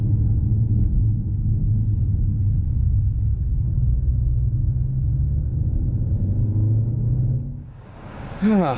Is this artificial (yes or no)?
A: yes